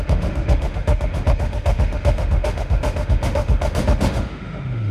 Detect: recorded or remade remade